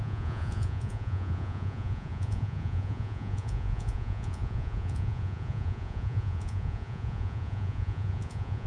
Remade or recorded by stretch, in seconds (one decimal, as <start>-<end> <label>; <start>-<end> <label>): 0.0-8.7 remade